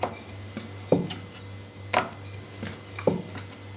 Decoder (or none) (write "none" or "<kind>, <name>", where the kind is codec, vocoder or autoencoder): none